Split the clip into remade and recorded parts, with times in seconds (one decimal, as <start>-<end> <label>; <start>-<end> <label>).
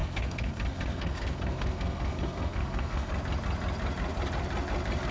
0.0-3.1 remade; 3.1-5.1 recorded